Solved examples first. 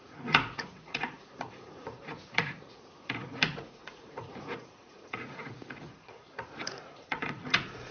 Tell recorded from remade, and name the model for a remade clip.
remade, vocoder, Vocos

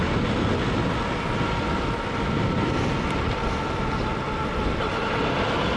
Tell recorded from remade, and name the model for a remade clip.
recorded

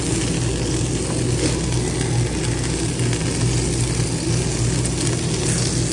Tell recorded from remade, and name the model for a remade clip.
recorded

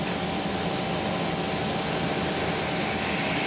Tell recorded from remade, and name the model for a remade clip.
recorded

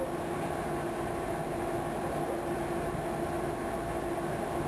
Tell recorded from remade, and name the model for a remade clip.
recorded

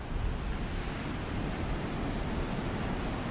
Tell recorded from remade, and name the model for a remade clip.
recorded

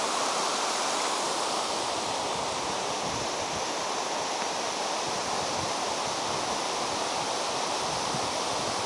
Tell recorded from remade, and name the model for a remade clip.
recorded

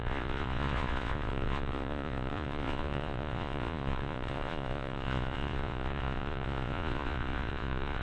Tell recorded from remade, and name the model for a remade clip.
remade, vocoder, Vocos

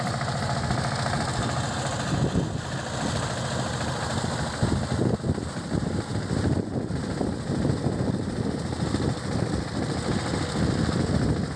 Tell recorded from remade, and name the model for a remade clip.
recorded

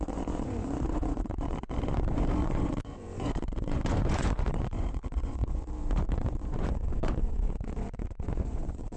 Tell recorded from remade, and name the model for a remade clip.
remade, vocoder, Vocos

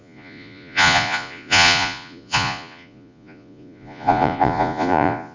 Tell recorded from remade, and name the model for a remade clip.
remade, vocoder, Vocos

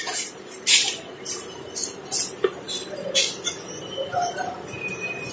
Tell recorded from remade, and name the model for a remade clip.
recorded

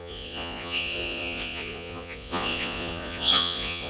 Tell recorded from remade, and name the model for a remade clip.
remade, vocoder, Vocos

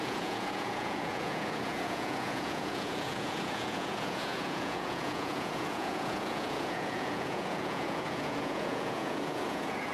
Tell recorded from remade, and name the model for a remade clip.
remade, vocoder, Vocos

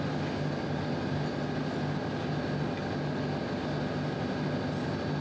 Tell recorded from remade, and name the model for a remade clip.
recorded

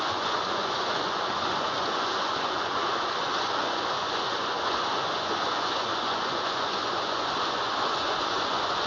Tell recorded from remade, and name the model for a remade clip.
remade, vocoder, Vocos